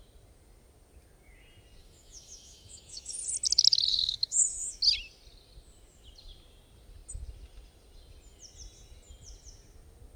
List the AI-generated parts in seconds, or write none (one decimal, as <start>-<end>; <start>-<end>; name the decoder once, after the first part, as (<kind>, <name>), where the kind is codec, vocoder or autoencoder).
1.8-3.2 (autoencoder, DAC-VAE); 3.9-4.8